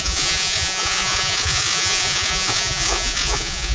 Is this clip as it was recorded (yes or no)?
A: no